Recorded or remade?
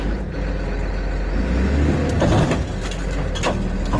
recorded